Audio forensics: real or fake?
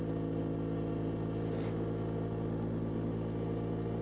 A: real